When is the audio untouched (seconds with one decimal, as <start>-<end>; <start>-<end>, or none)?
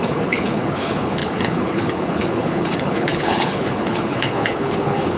none